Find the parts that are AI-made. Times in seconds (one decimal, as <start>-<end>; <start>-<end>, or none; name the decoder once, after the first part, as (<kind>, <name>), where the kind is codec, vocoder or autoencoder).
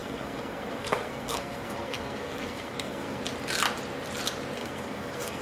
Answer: 0.0-3.2 (codec, SNAC); 4.6-5.4